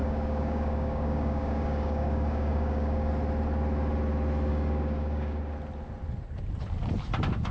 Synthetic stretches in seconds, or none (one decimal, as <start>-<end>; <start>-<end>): 0.0-3.1; 4.5-5.4